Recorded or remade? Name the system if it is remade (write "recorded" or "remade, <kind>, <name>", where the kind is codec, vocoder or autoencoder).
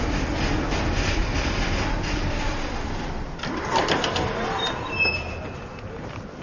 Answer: recorded